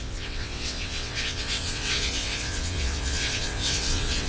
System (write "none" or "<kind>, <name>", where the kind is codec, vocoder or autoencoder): vocoder, WaveNeXt